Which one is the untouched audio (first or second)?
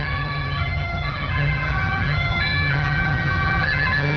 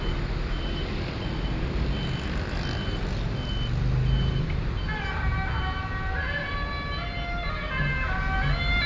second